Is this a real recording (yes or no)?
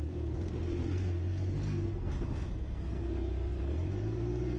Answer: no